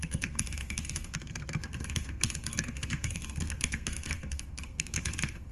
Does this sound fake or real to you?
fake